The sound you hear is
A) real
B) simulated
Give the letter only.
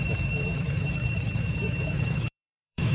B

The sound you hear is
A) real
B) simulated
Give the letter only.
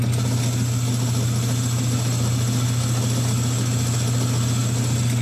A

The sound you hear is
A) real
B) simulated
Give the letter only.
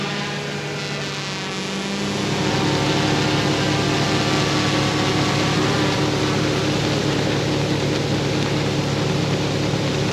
A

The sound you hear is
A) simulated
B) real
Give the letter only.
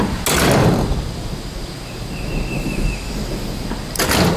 B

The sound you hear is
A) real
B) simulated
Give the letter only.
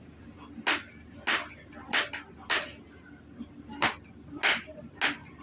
A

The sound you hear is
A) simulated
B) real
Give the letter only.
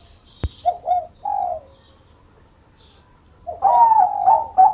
B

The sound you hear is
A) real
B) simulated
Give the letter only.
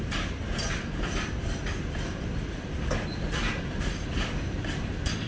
A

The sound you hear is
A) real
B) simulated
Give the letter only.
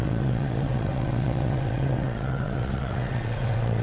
B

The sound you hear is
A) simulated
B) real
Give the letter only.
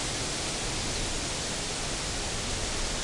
B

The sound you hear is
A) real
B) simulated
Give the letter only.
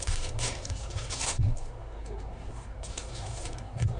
B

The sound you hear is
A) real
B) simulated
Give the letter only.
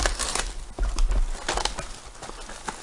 A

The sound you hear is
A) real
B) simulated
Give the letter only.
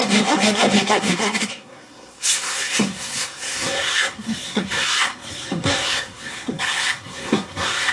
B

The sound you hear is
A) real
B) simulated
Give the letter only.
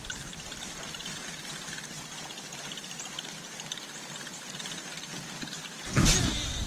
A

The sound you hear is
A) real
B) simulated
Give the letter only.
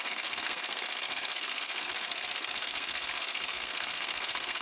B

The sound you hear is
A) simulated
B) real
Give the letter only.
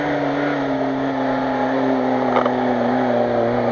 B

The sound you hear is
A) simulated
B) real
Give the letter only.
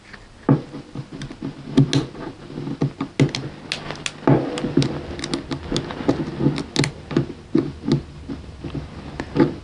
B